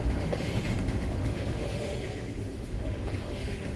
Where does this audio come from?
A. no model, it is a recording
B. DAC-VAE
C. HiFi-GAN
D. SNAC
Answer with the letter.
B